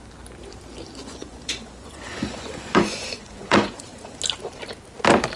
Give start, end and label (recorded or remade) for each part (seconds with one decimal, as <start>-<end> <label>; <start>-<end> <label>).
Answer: 0.0-1.0 recorded; 1.0-4.2 remade; 4.2-5.4 recorded